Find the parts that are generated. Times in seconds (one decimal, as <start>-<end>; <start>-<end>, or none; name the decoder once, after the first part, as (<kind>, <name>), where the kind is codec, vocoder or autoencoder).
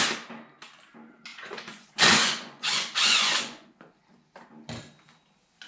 1.3-4.0 (vocoder, Vocos)